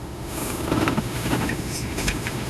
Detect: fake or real fake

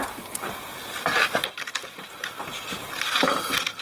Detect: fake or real real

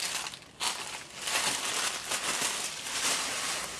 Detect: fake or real real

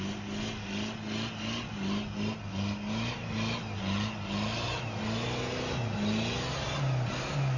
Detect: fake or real real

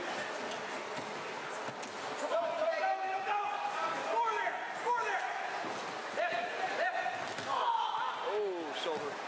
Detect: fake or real real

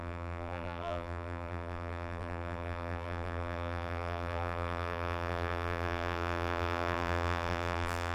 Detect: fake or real fake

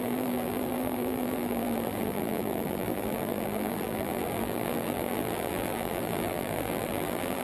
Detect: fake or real fake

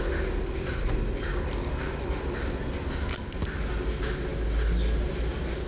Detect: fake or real real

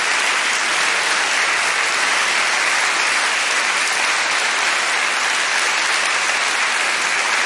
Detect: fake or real real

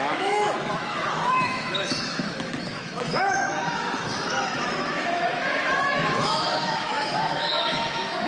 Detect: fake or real fake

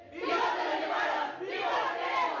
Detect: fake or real real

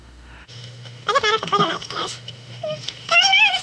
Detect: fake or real fake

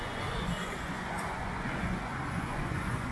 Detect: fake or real fake